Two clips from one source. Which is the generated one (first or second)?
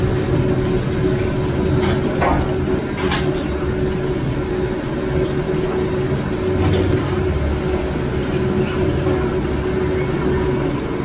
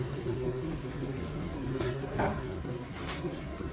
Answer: second